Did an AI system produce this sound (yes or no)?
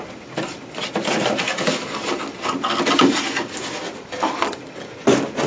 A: no